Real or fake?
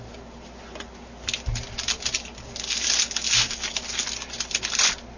real